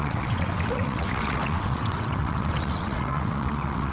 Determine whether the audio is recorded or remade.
remade